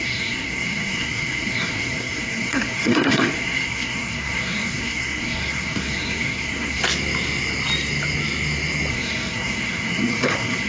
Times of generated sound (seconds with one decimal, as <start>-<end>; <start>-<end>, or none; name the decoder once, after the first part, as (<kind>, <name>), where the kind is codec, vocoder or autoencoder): 0.0-6.8 (codec, SNAC); 8.9-10.7